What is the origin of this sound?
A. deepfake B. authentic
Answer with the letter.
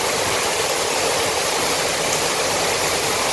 B